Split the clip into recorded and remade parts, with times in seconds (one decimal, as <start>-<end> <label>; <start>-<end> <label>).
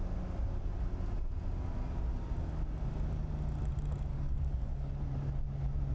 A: 0.0-4.1 recorded; 4.1-4.9 remade; 4.9-5.9 recorded